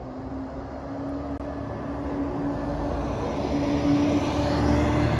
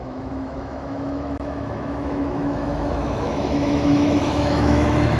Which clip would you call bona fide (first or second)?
first